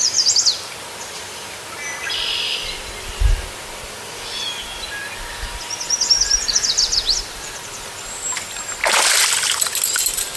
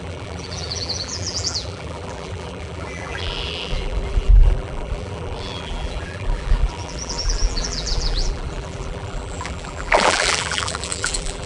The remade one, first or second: second